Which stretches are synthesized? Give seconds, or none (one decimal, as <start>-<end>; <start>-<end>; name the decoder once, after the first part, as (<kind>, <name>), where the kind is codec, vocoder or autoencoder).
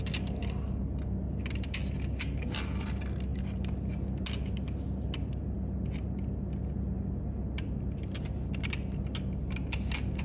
none